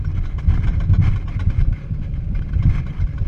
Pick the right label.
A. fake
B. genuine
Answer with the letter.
B